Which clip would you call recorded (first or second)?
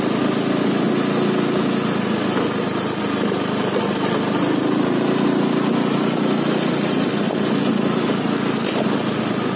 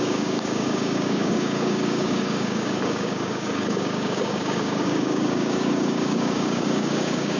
first